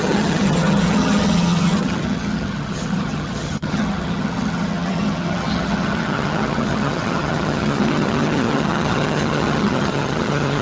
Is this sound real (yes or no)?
no